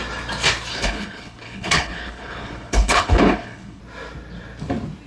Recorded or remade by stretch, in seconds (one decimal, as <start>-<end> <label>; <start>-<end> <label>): 0.0-0.7 recorded; 0.7-3.8 remade; 3.8-5.1 recorded